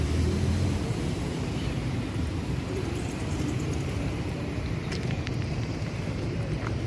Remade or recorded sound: remade